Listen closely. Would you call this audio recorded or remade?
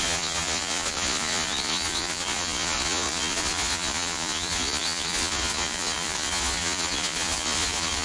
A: remade